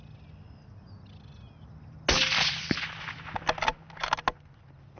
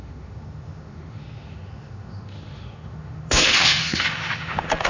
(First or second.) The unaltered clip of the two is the first